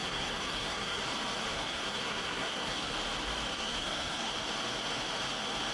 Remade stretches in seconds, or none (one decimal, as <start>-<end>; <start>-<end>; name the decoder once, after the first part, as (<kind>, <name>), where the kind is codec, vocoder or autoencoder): 0.0-1.0 (codec, SNAC); 1.5-2.9; 3.5-4.3

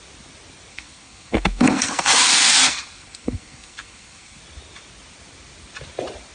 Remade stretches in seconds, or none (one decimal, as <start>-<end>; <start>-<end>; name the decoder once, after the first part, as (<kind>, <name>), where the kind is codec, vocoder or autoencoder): 0.7-4.4 (codec, SNAC)

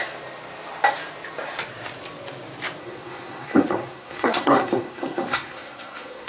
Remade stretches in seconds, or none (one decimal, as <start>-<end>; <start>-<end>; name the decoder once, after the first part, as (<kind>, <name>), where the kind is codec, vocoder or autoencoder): 2.8-6.3 (codec, SNAC)

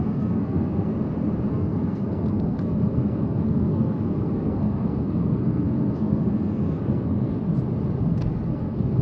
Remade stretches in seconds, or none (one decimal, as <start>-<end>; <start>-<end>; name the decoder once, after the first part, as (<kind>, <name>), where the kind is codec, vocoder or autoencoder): 0.0-0.9 (codec, SNAC); 1.5-7.3; 8.0-9.0

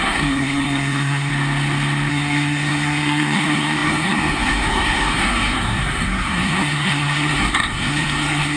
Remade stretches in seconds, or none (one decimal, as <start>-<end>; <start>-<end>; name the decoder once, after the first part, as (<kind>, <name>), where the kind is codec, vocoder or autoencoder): 0.0-1.3 (codec, SNAC); 2.1-8.6

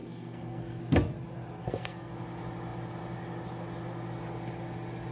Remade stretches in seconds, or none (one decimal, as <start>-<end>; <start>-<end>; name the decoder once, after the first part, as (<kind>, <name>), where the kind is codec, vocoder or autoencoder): 0.0-0.8 (codec, SNAC); 1.6-2.1

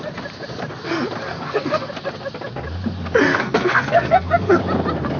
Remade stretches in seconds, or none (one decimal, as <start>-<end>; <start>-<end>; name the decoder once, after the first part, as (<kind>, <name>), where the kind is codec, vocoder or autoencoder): 1.3-1.9 (codec, SNAC); 3.3-4.6